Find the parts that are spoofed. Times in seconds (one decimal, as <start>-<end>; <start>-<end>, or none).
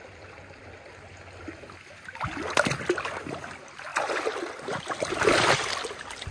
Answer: none